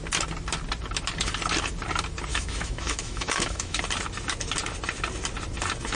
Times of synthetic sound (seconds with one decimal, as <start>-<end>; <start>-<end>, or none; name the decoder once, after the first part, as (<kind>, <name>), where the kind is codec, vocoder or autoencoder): 2.3-3.8 (autoencoder, DAC-VAE)